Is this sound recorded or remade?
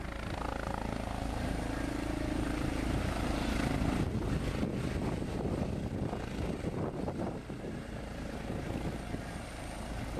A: recorded